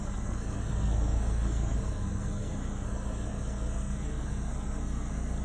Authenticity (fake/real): fake